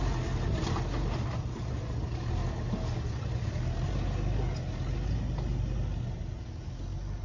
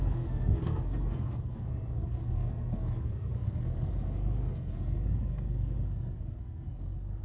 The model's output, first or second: second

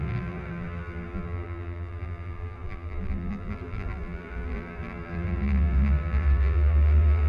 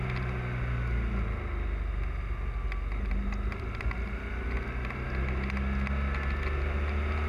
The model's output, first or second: first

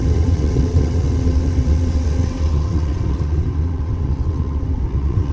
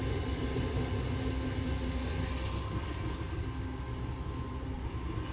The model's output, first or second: first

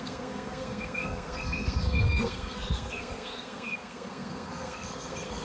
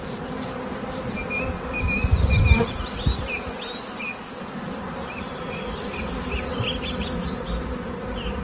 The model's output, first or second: first